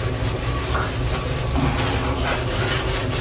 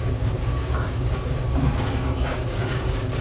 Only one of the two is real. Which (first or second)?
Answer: first